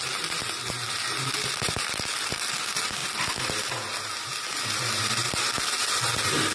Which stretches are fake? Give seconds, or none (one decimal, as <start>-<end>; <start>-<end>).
none